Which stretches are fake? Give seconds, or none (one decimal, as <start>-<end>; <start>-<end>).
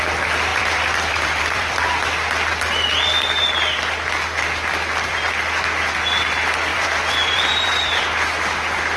0.5-1.8; 6.7-8.0